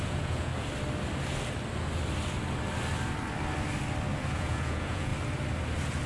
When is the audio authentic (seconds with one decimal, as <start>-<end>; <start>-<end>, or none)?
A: 0.5-4.2; 5.1-6.1